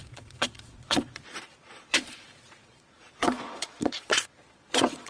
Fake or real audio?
fake